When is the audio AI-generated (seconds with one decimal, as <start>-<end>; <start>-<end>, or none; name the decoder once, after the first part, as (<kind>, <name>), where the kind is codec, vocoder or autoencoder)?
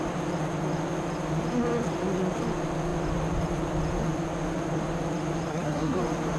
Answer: 5.5-6.0 (codec, SNAC)